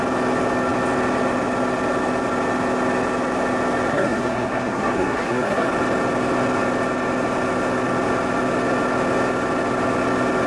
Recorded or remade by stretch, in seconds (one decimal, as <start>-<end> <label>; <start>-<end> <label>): 0.0-3.9 recorded; 3.9-5.7 remade; 5.7-10.5 recorded